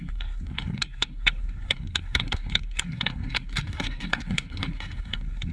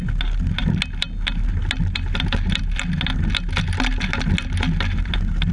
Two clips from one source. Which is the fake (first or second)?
first